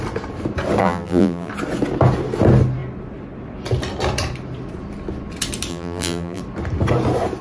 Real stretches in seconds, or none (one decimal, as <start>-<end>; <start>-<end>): 0.0-0.8; 1.5-5.7; 6.4-7.4